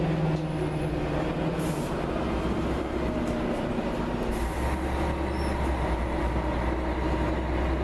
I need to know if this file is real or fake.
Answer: real